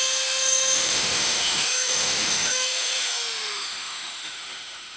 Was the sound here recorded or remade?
remade